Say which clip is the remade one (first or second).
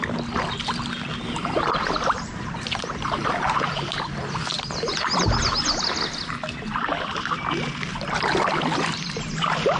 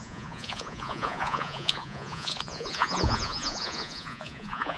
second